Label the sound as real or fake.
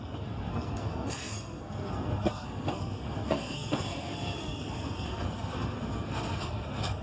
fake